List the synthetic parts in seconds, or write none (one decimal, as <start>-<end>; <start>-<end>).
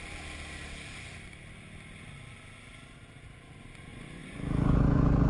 3.9-5.3